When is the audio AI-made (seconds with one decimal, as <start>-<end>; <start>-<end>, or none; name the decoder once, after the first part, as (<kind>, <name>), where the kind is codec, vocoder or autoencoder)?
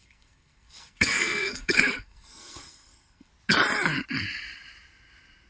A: 0.0-3.3 (codec, SNAC)